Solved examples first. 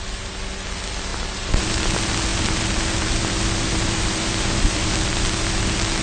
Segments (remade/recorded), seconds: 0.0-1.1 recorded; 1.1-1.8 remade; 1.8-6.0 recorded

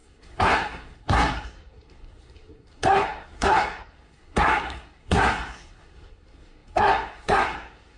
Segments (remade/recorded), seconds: 0.0-8.0 remade

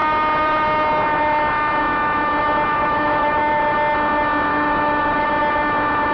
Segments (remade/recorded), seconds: 0.0-2.8 recorded; 2.8-3.6 remade; 3.6-4.5 recorded; 4.5-5.3 remade; 5.3-6.1 recorded